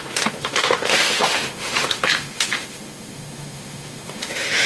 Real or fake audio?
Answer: fake